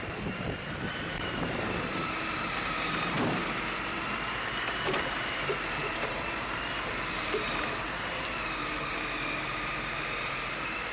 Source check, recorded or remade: remade